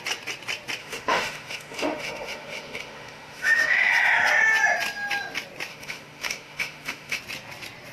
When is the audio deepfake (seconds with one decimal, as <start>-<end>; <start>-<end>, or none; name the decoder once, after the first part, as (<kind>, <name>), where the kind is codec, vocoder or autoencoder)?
0.8-3.9 (autoencoder, DAC-VAE); 5.7-7.2